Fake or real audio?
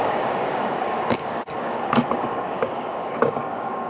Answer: fake